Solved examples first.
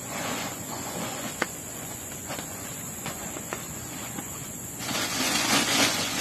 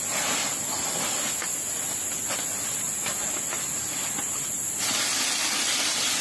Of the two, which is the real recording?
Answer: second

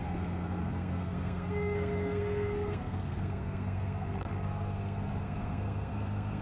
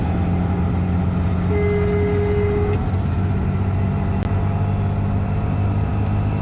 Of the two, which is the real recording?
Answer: second